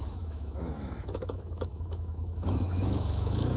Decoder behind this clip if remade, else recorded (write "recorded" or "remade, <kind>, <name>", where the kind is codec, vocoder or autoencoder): remade, autoencoder, DAC-VAE